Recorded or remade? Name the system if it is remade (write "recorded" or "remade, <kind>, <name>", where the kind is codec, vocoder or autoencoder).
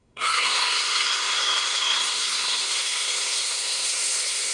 remade, codec, SNAC